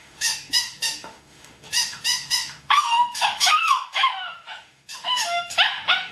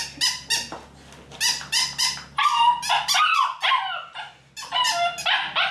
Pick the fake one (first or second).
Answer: first